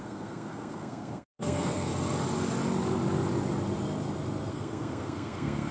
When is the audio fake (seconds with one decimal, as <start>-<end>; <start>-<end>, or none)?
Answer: 0.0-1.9; 4.5-5.7